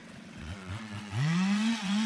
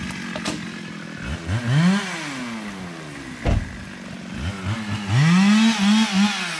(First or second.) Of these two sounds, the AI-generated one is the first